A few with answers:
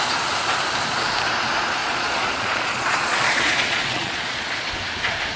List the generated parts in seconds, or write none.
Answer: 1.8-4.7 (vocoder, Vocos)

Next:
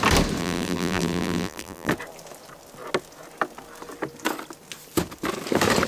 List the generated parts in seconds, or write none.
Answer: 0.4-1.9 (vocoder, BigVGAN v2)

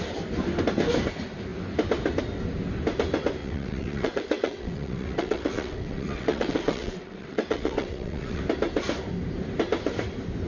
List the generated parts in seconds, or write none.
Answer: 3.4-8.4 (vocoder, WaveNeXt)

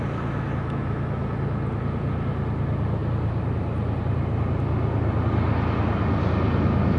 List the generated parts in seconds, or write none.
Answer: none

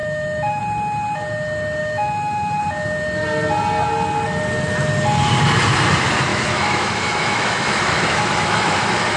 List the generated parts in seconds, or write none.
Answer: 0.0-0.6 (autoencoder, DAC-VAE); 1.8-2.6; 6.3-9.2